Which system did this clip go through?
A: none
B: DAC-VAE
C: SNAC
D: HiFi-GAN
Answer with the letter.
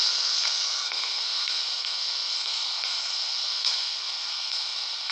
C